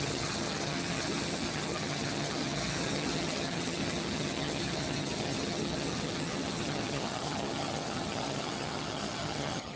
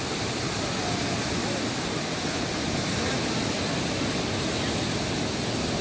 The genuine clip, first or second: second